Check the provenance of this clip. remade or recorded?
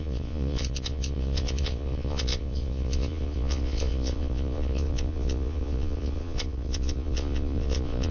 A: remade